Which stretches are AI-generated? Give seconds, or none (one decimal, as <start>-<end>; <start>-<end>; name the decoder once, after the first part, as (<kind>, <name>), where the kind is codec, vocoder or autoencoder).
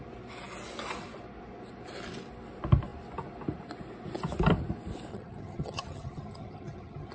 5.1-7.1 (vocoder, HiFi-GAN)